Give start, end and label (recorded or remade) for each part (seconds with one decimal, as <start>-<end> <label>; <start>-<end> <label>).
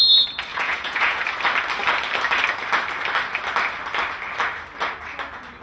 0.0-0.5 recorded; 0.5-1.2 remade; 1.2-5.6 recorded